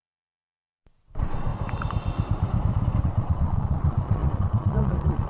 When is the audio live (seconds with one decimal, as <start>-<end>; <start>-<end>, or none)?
1.5-3.0